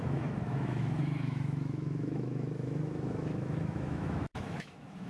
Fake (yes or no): yes